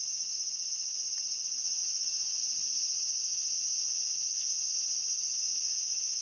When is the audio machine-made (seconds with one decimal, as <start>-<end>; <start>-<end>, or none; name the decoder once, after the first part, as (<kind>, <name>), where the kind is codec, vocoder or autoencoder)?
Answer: 1.8-2.4 (autoencoder, DAC-VAE); 3.2-6.2